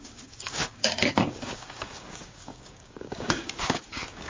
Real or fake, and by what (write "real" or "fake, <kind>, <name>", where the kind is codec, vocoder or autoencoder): fake, codec, DAC